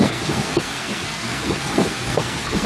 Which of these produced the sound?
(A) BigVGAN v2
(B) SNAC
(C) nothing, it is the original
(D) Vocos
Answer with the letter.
B